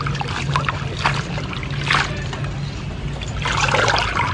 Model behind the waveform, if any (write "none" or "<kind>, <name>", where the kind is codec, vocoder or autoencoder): none